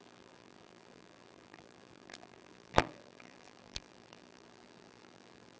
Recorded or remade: remade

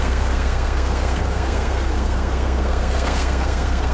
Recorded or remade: remade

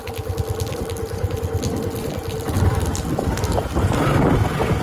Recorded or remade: recorded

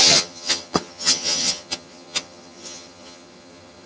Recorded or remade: remade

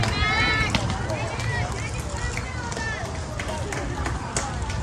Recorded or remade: recorded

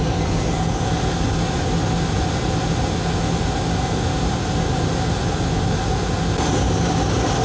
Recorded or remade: recorded